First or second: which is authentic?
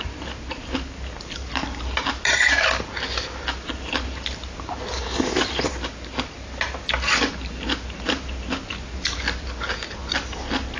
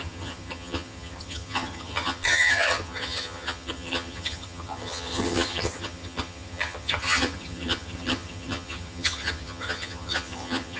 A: first